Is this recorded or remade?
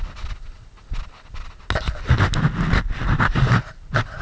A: recorded